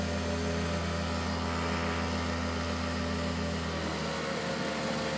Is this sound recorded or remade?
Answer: recorded